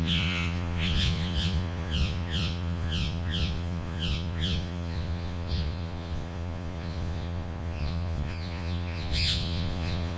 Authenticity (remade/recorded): remade